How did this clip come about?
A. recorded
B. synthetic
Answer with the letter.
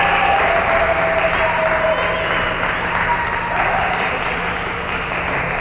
A